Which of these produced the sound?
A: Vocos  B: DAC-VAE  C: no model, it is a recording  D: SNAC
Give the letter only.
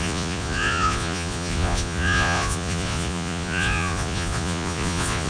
A